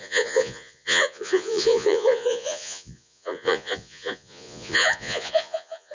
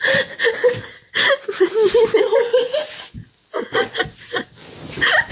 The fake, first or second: first